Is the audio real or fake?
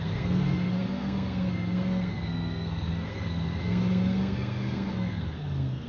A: fake